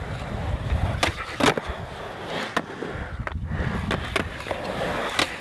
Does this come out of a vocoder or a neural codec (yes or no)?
no